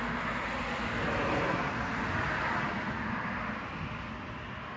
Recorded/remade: recorded